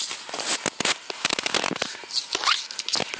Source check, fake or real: real